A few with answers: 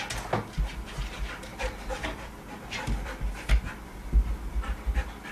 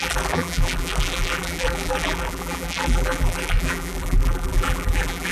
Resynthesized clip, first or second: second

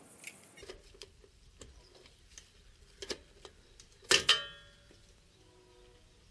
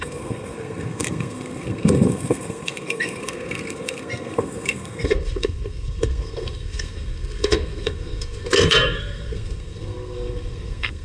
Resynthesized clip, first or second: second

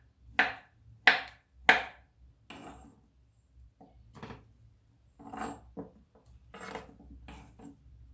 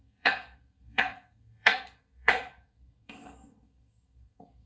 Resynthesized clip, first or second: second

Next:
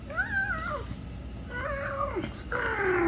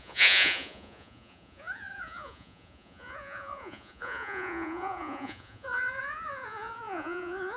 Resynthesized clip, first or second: second